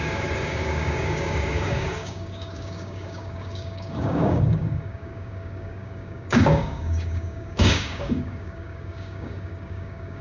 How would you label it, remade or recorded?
remade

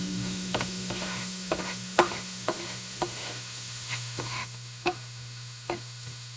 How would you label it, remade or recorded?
remade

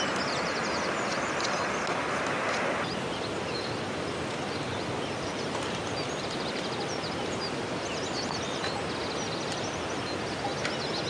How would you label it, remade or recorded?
recorded